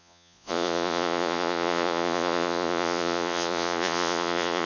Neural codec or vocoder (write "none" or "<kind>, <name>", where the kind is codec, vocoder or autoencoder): vocoder, Vocos